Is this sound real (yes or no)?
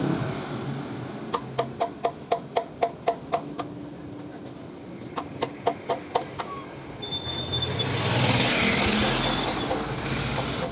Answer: yes